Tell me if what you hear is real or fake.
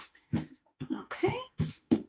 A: fake